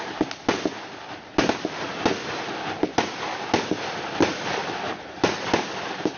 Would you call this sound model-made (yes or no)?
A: no